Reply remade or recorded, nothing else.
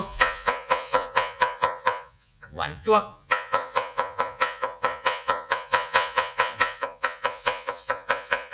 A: remade